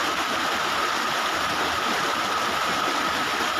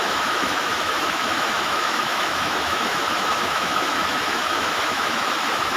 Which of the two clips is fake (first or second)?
second